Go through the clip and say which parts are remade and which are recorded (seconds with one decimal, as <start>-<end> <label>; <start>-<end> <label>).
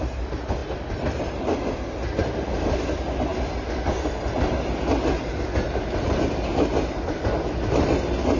0.0-8.4 recorded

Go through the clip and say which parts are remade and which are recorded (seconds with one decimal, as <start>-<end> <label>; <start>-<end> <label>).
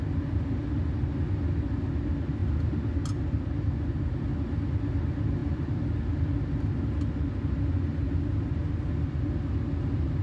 0.0-10.2 recorded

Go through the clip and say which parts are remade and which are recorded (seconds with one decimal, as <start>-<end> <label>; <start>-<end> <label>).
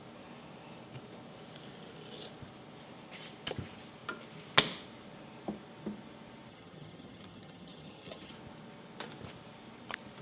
0.0-6.5 recorded; 6.5-8.3 remade; 8.3-10.2 recorded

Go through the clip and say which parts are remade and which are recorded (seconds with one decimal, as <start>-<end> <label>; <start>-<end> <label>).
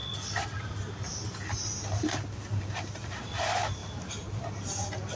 0.0-3.8 recorded; 3.8-4.4 remade; 4.4-5.2 recorded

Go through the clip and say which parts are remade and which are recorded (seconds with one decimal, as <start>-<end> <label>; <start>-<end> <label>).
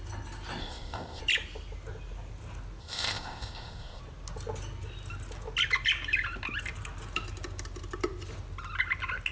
0.0-0.6 recorded; 0.6-1.2 remade; 1.2-2.8 recorded; 2.8-4.0 remade; 4.0-9.3 recorded